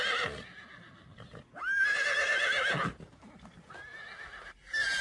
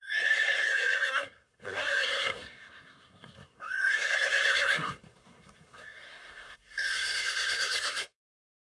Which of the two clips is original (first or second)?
first